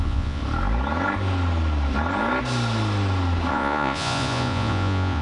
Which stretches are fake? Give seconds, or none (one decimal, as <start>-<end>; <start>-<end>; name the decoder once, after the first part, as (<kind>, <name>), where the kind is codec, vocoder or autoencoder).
0.0-0.4 (vocoder, Vocos); 3.5-5.2

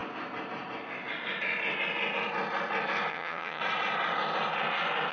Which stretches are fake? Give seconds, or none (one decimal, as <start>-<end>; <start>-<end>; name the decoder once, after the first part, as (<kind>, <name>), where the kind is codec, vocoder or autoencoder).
3.1-3.6 (vocoder, HiFi-GAN)

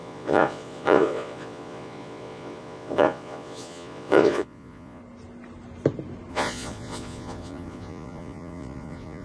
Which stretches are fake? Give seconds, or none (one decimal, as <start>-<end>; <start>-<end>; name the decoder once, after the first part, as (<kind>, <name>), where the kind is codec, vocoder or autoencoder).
0.0-5.0 (vocoder, Vocos); 6.3-9.2

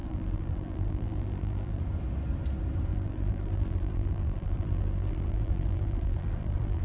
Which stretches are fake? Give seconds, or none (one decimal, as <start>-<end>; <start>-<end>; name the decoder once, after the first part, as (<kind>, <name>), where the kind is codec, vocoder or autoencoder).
0.0-1.8 (vocoder, BigVGAN v2); 2.9-6.8